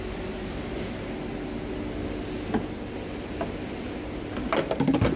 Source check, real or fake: real